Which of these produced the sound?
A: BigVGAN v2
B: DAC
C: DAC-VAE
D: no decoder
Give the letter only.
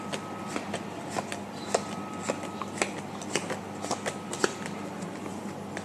D